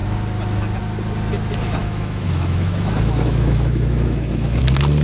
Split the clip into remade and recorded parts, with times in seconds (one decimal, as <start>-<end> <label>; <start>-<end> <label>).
0.0-1.8 recorded; 1.8-4.6 remade; 4.6-5.0 recorded